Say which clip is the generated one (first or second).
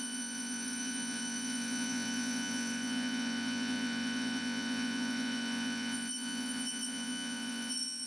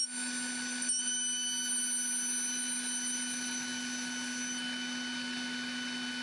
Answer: first